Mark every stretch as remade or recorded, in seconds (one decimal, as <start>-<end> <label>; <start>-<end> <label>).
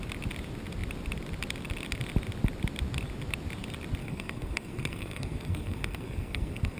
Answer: 0.0-4.0 recorded; 4.0-6.8 remade